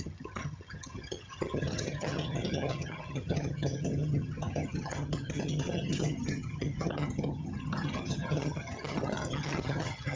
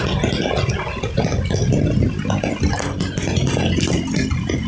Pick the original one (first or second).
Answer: second